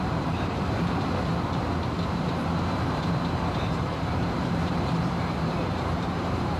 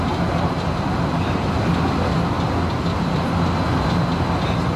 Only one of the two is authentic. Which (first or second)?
second